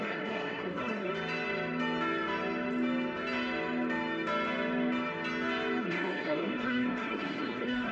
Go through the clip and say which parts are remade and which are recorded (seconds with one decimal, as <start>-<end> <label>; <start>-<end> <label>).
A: 0.0-1.1 remade; 1.1-5.8 recorded; 5.8-7.9 remade